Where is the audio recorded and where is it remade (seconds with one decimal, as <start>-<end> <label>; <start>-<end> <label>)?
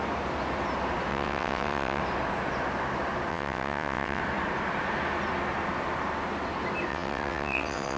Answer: 0.0-1.1 recorded; 1.1-2.0 remade; 2.0-3.3 recorded; 3.3-4.2 remade; 4.2-6.9 recorded; 6.9-8.0 remade